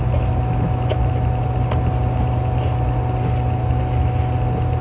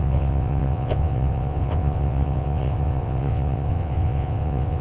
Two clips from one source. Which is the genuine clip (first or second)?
first